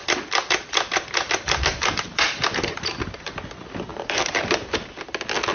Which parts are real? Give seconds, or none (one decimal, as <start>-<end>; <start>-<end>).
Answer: 3.3-3.9; 5.0-5.5